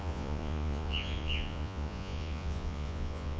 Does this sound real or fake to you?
fake